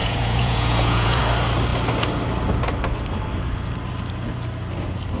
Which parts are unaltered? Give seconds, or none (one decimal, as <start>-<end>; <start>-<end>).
1.2-5.2